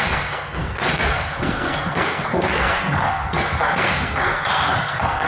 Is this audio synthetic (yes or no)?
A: yes